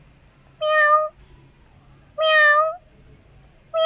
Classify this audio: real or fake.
real